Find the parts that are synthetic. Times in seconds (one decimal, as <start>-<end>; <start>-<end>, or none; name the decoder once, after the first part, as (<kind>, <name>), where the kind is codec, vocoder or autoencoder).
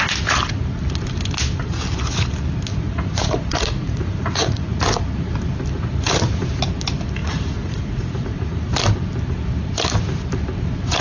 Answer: 2.7-4.8 (vocoder, Vocos); 7.2-8.7